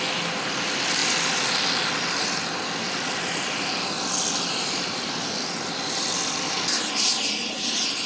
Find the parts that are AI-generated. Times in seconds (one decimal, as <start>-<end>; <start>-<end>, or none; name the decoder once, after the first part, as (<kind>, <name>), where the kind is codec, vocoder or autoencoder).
none